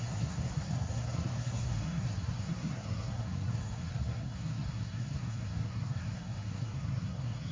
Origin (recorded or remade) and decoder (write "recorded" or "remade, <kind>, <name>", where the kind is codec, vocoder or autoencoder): remade, codec, SNAC